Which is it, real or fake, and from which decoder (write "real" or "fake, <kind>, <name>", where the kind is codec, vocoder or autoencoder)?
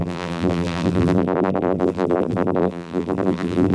fake, vocoder, BigVGAN v2